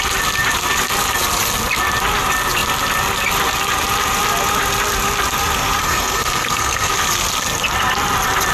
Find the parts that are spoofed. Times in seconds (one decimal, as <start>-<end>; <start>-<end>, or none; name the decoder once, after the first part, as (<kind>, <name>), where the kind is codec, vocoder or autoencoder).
5.8-6.9 (codec, SNAC)